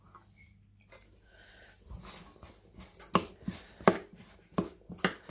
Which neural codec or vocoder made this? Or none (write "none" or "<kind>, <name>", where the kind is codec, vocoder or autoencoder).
none